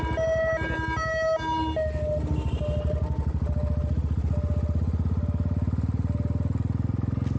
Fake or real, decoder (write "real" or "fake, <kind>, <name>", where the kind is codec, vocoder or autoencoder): real